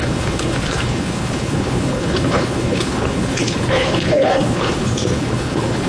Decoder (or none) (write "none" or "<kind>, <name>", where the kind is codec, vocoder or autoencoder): codec, HILCodec